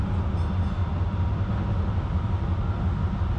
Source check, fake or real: real